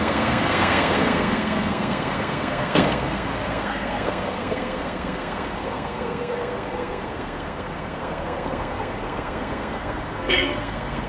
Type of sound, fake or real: fake